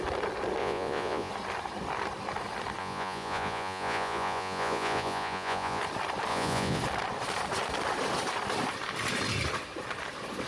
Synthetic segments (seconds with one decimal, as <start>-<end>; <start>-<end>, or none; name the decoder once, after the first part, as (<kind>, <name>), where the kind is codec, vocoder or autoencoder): 0.6-1.3 (vocoder, Vocos); 2.8-5.8; 6.3-6.8